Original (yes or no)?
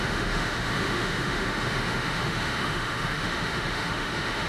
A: no